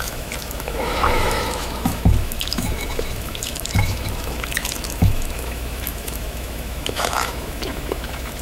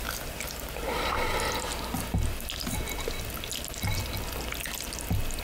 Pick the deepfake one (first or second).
first